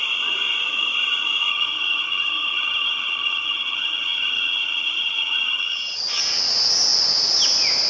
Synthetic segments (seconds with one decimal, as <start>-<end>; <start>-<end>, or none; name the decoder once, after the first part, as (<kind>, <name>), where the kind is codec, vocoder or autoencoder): 1.5-6.2 (vocoder, HiFi-GAN)